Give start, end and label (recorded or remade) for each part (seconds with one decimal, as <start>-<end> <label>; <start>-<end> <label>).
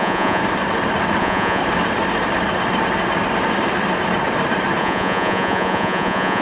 0.0-0.4 remade; 0.4-1.2 recorded; 1.2-1.6 remade; 1.6-4.8 recorded; 4.8-6.4 remade